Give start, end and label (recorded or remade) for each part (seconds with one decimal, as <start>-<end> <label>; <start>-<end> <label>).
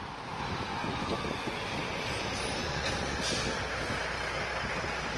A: 0.0-0.7 recorded; 0.7-1.7 remade; 1.7-2.6 recorded; 2.6-3.2 remade; 3.2-5.2 recorded